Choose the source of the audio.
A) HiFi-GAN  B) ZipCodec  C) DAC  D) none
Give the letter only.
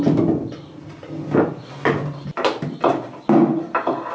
D